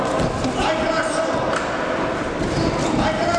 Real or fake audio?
real